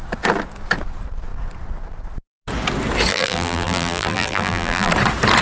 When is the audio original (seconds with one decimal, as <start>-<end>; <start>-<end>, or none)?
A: 0.0-3.1; 4.9-5.4